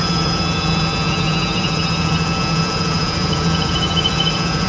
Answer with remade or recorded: remade